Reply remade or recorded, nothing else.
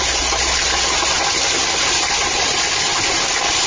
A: remade